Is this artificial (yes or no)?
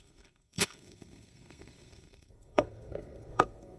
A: yes